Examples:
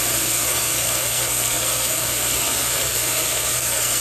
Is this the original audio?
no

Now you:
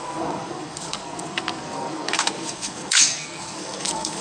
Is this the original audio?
no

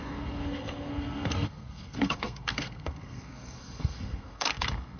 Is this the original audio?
no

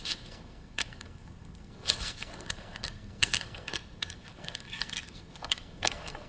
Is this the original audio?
no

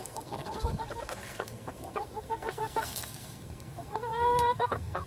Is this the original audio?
no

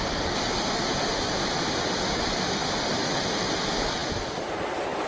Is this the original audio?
yes